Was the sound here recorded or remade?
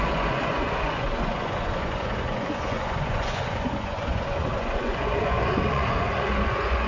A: remade